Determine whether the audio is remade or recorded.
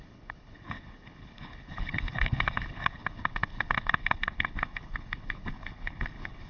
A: remade